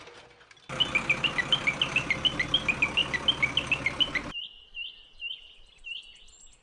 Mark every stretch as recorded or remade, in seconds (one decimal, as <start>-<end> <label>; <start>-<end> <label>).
0.0-6.6 recorded